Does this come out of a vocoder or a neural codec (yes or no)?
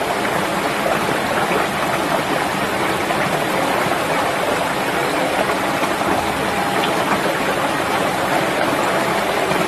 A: no